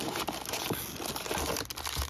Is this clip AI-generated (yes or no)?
no